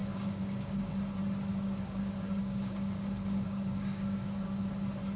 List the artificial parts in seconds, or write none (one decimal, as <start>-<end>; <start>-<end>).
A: 0.0-0.9; 1.5-4.6